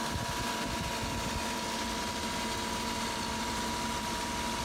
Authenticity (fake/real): real